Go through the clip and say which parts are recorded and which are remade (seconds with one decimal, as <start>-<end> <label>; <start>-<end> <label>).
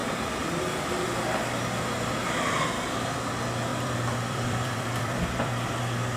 0.0-3.7 recorded; 3.7-5.8 remade; 5.8-6.2 recorded